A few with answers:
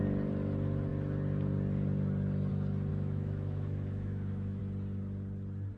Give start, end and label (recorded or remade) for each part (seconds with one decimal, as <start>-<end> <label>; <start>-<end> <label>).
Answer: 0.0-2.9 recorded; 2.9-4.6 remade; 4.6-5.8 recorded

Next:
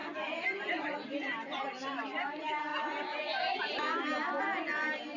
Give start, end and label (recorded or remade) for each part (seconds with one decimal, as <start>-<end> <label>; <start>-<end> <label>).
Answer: 0.0-5.2 recorded

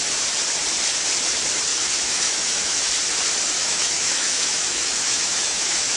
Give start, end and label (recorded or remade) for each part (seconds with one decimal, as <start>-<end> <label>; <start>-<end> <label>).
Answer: 0.0-1.7 recorded; 1.7-2.9 remade; 2.9-3.6 recorded; 3.6-6.0 remade